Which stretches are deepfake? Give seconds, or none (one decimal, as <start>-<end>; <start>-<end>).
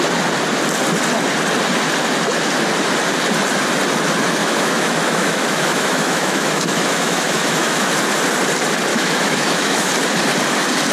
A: 4.4-7.9; 8.9-9.9